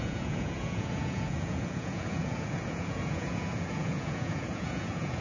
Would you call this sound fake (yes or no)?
yes